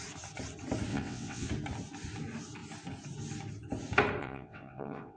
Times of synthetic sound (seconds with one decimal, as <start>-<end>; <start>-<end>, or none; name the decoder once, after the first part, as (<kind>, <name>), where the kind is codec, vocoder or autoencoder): 0.9-1.5 (vocoder, WaveNeXt); 4.2-5.2